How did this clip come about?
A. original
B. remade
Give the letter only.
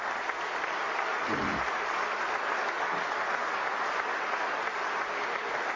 A